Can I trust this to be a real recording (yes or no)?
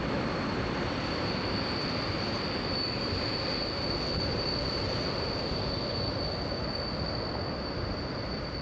yes